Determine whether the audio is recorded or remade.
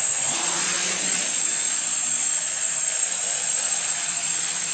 remade